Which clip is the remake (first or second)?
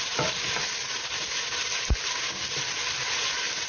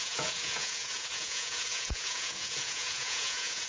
second